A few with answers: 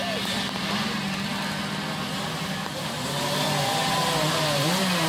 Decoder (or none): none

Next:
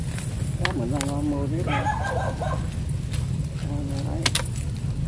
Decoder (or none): none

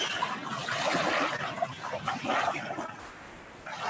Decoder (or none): none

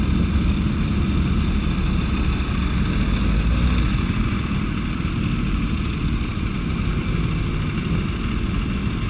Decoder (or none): none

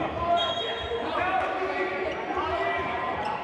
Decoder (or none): vocoder, BigVGAN v2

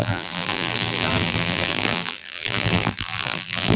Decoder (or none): vocoder, BigVGAN v2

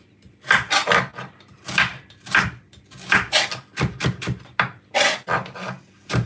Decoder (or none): none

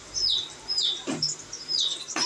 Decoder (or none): vocoder, BigVGAN v2